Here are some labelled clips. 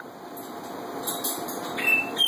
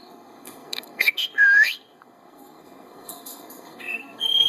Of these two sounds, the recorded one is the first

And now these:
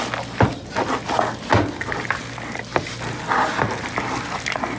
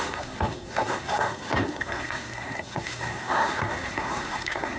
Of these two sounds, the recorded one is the first